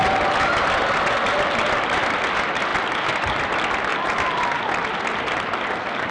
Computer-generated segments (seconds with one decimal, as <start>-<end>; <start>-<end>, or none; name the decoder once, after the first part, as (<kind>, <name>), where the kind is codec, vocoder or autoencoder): 3.9-4.6 (vocoder, BigVGAN v2)

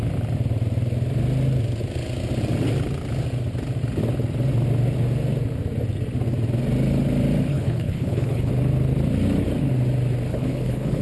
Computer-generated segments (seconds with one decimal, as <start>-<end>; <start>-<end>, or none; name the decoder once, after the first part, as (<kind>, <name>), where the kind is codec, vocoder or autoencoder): 7.5-8.5 (codec, HILCodec); 10.3-11.0

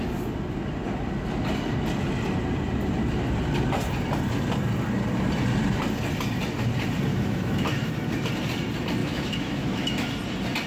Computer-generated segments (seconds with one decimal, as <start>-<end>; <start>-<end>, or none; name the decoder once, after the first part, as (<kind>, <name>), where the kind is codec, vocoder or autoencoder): 7.1-7.9 (autoencoder, DAC-VAE); 9.0-10.1

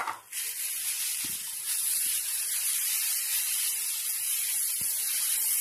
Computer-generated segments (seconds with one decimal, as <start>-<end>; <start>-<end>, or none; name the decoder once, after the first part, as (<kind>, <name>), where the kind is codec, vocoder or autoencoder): none

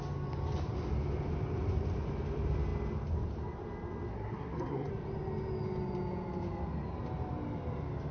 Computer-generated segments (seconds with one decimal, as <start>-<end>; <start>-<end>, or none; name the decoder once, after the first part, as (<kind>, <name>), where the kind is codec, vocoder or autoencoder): 4.1-4.9 (codec, SNAC)

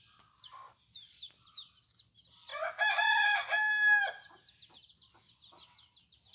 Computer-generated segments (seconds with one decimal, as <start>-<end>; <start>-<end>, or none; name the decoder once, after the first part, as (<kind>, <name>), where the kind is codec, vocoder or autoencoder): none